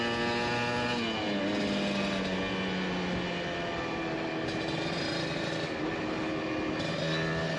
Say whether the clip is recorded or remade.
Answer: recorded